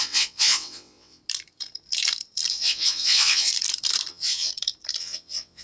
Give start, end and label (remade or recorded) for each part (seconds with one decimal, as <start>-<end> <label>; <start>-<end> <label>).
0.0-1.2 remade; 1.2-2.5 recorded; 2.5-3.5 remade; 3.5-4.1 recorded; 4.1-4.5 remade; 4.5-5.0 recorded; 5.0-5.6 remade